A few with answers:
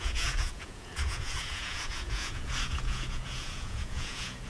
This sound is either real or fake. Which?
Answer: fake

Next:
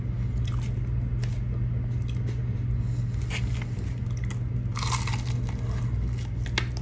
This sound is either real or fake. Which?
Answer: real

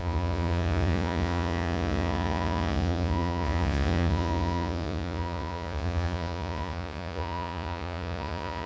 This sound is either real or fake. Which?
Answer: fake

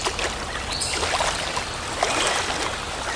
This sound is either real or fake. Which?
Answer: real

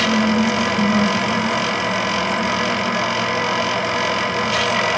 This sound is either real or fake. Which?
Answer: real